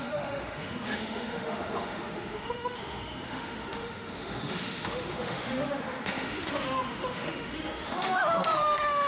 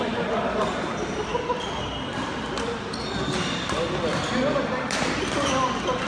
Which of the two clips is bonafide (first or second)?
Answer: second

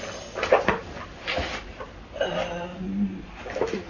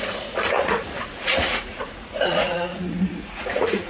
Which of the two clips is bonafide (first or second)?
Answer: first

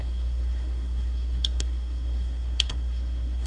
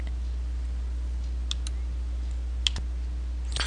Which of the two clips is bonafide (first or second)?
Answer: second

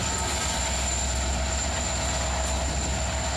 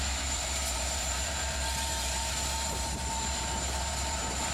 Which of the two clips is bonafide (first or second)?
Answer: first